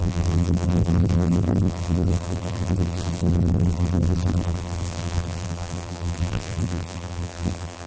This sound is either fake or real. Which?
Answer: fake